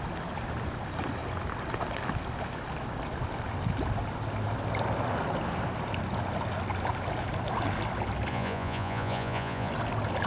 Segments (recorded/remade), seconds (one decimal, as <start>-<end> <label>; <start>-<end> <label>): 0.0-8.3 recorded; 8.3-9.7 remade; 9.7-10.3 recorded